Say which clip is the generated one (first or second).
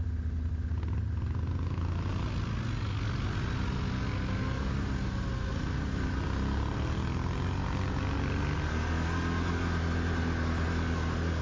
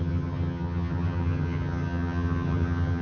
second